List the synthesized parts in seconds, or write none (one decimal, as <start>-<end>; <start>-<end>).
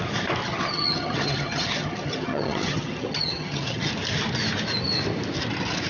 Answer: 0.4-3.9